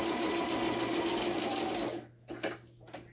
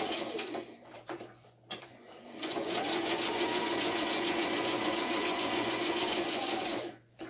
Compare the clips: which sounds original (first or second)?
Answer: first